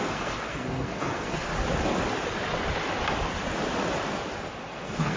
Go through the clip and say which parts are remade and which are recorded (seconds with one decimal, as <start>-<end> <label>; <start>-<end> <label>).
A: 0.0-1.5 remade; 1.5-4.6 recorded; 4.6-5.2 remade